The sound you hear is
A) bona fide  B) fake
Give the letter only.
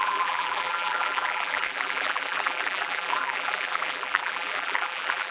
B